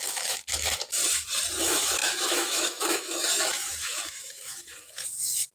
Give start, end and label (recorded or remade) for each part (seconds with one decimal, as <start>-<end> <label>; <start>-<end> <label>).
0.0-1.0 remade; 1.0-1.6 recorded; 1.6-5.5 remade